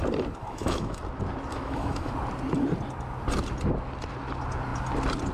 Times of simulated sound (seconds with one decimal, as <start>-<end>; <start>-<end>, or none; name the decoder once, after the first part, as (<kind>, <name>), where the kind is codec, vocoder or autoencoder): 0.4-1.0 (autoencoder, DAC-VAE); 1.5-2.1